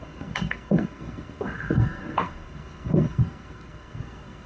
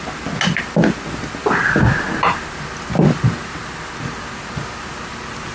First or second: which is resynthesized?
first